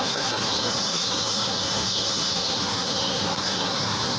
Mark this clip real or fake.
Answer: fake